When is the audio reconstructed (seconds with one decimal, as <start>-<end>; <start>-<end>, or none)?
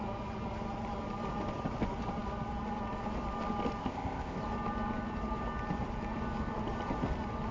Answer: 3.8-4.4